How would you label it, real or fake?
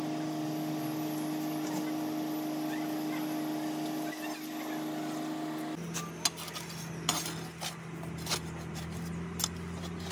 real